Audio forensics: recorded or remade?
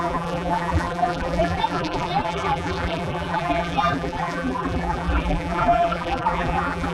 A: remade